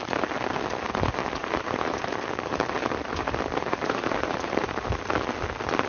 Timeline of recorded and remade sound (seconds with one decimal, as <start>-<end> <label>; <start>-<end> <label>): 0.0-1.4 recorded; 1.4-4.9 remade; 4.9-5.9 recorded